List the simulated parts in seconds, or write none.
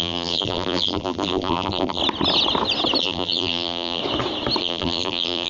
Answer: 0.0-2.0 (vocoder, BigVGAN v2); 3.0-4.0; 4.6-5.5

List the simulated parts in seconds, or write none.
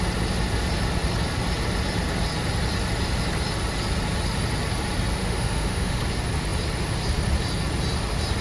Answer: 5.2-6.0 (autoencoder, DAC-VAE)